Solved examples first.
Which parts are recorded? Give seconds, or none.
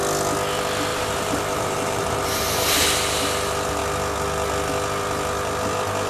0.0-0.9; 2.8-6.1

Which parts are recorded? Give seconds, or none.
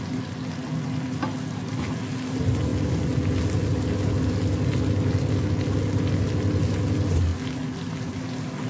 0.0-8.7